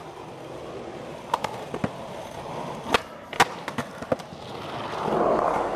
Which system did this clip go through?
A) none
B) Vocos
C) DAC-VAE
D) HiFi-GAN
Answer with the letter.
A